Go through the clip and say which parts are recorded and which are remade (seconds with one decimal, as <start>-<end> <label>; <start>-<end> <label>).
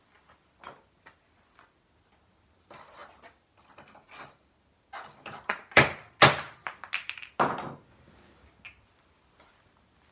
0.0-10.1 recorded